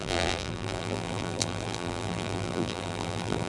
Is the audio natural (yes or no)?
no